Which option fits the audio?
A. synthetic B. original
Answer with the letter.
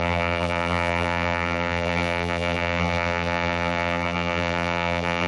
A